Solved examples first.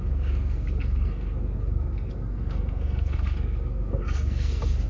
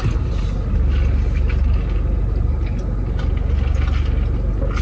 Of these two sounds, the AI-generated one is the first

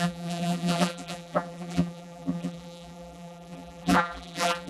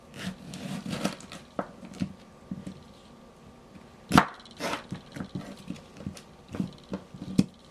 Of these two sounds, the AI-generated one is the first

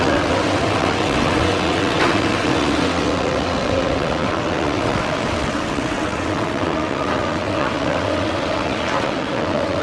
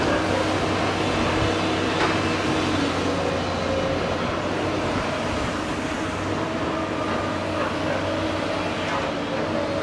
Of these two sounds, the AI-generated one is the first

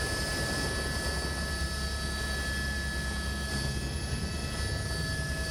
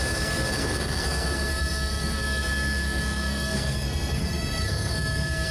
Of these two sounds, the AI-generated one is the second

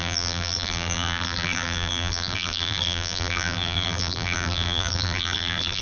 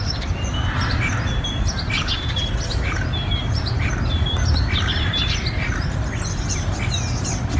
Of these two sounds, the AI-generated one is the first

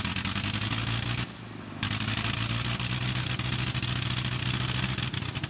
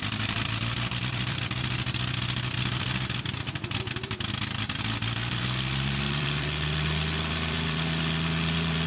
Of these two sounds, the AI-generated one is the second